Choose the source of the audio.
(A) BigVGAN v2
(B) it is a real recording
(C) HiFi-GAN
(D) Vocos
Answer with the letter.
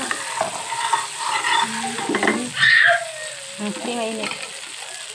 B